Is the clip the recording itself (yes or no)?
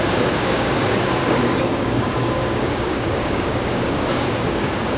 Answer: no